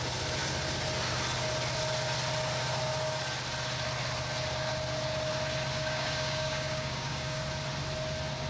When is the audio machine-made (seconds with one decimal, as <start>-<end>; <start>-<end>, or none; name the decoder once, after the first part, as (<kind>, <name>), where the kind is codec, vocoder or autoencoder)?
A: 5.7-7.4 (codec, DAC)